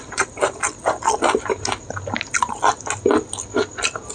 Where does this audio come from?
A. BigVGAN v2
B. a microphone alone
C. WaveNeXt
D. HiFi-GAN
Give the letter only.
B